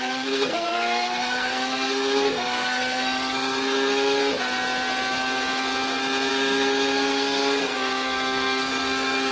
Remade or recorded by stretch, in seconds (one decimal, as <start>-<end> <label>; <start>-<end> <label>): 0.0-4.2 remade; 4.2-6.3 recorded; 6.3-9.3 remade